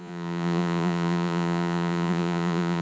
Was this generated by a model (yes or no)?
yes